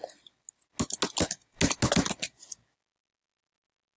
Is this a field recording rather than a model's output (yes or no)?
yes